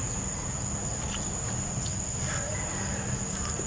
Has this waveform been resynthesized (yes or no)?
no